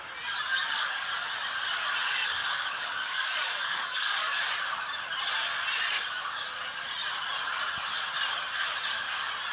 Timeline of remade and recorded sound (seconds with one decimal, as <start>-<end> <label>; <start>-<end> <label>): 0.0-0.5 recorded; 0.5-1.1 remade; 1.1-2.0 recorded; 2.0-4.4 remade; 4.4-9.5 recorded